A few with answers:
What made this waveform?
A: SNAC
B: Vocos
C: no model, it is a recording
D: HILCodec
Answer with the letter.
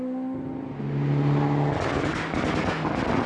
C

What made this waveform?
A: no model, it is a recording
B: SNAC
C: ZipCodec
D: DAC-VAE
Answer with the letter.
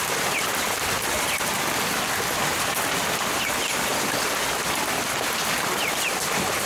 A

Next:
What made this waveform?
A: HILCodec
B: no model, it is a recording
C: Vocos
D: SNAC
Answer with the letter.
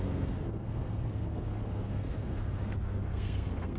D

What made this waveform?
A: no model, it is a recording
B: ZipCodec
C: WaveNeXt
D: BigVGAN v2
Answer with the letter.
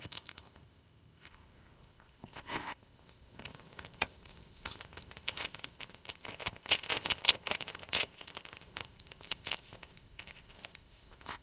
B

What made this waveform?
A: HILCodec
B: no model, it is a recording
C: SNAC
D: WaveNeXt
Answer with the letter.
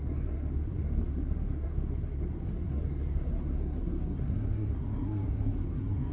C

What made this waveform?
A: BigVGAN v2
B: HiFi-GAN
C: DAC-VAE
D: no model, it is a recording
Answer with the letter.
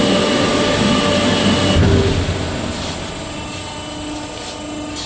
D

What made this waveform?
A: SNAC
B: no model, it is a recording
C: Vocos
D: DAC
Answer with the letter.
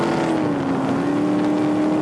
B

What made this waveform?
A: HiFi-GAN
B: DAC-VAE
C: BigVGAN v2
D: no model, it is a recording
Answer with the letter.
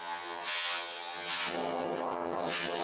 A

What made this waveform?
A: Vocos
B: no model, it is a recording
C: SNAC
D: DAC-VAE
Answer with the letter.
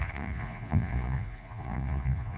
A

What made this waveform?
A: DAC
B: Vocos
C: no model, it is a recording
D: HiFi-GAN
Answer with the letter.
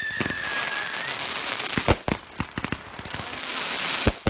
C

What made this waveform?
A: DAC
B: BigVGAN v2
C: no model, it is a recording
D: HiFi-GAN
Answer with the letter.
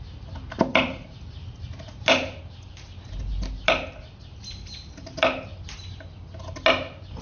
C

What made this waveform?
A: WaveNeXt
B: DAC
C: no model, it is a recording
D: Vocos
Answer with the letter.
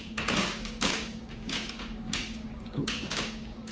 B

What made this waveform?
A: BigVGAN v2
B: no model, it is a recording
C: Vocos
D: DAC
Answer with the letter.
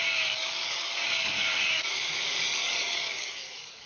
D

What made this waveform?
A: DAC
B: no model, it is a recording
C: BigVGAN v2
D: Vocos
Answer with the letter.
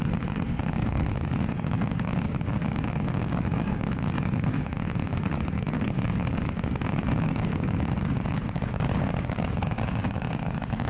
A